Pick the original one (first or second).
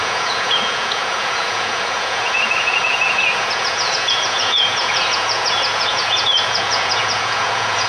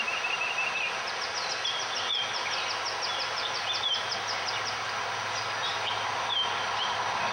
second